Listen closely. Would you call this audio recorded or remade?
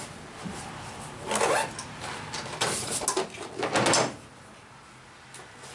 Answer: recorded